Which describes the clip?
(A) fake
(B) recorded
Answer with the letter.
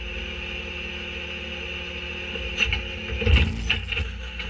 B